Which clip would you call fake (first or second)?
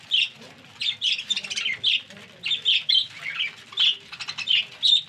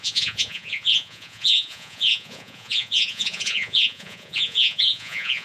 second